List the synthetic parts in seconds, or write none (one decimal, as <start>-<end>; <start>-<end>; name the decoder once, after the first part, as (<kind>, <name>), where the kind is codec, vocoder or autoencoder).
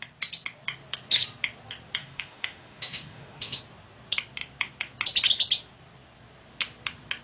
2.0-3.6 (autoencoder, DAC-VAE)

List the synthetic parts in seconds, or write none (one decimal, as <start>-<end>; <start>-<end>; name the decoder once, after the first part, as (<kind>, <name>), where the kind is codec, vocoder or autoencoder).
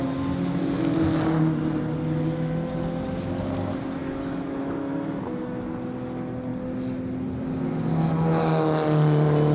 4.0-5.6 (autoencoder, DAC-VAE)